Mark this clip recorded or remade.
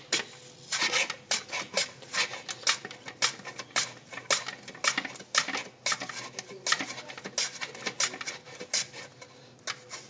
recorded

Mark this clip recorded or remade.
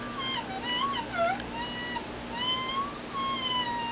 recorded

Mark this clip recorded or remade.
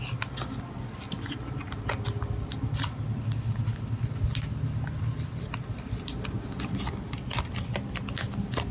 recorded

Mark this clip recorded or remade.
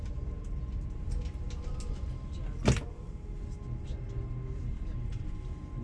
recorded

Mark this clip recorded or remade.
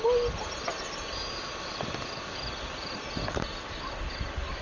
recorded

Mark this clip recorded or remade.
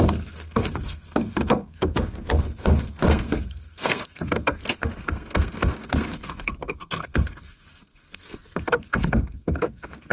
remade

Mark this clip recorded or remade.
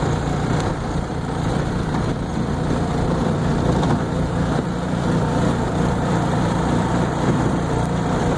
remade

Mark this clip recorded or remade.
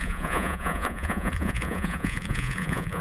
remade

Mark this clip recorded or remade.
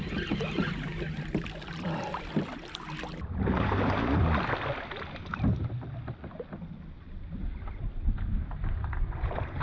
recorded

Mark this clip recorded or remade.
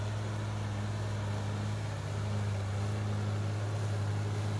recorded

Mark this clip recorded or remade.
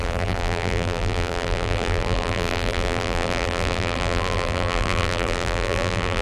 remade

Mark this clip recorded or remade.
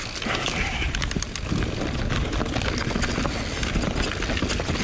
recorded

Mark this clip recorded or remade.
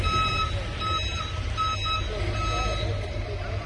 recorded